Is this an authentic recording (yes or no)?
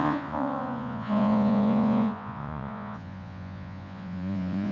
no